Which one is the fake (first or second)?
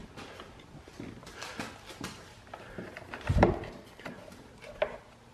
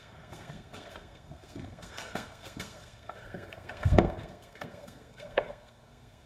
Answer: second